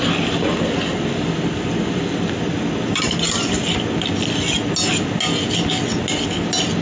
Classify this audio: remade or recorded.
recorded